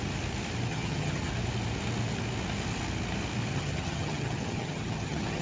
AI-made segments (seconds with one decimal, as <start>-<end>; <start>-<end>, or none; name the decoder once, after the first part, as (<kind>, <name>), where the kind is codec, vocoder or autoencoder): 0.7-1.3 (vocoder, HiFi-GAN); 3.5-5.4